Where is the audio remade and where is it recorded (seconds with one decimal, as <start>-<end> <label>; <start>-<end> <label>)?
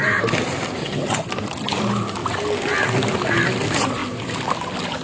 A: 0.0-0.8 recorded; 0.8-1.3 remade; 1.3-5.0 recorded